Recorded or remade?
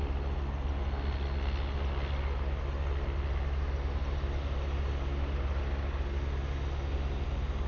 recorded